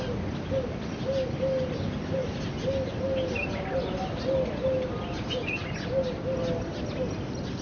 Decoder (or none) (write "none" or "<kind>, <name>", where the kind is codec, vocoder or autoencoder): none